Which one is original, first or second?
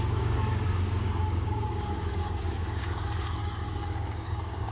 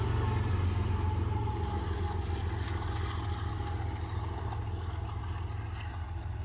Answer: second